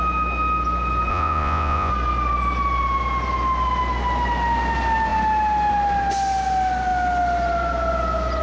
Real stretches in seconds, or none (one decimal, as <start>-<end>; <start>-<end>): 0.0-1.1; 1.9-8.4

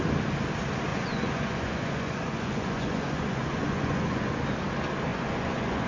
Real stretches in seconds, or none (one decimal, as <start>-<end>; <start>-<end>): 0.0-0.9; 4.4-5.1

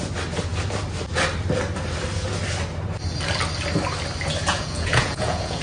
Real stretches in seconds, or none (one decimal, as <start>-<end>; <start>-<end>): 0.0-4.5